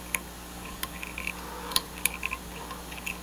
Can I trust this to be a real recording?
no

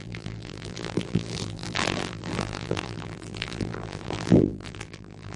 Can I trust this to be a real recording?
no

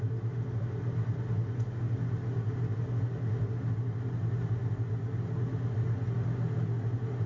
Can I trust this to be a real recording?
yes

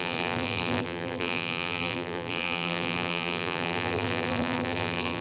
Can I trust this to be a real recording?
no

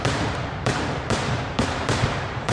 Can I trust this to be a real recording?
no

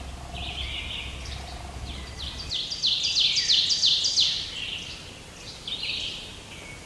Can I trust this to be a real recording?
yes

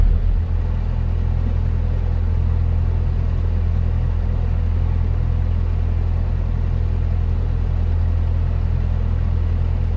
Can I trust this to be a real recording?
yes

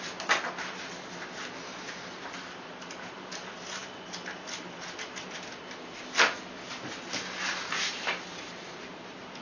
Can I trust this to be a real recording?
yes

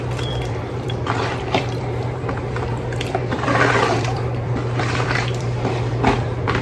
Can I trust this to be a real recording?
no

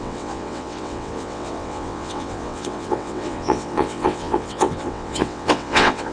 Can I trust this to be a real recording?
no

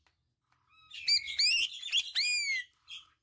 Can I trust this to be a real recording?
yes